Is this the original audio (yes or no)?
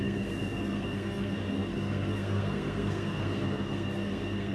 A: no